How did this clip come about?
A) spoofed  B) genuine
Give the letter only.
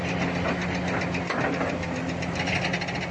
B